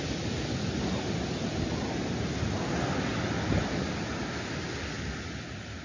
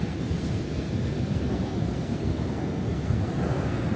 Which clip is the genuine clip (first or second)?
first